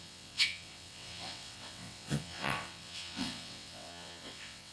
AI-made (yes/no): yes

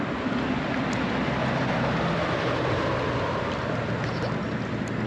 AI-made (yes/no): no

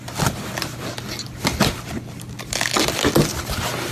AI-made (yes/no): no